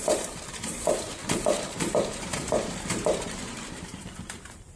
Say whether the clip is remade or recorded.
remade